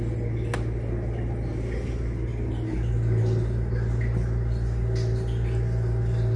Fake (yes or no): no